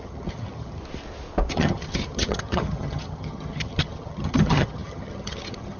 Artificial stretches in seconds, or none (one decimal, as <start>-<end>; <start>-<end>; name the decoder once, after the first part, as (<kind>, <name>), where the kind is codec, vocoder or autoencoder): 0.0-0.8 (vocoder, HiFi-GAN); 1.5-5.8